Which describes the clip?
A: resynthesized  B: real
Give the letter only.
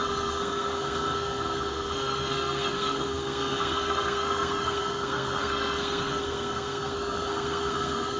A